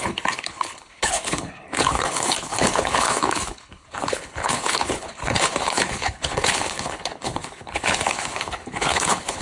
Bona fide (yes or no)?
no